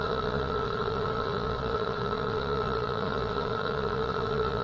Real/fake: fake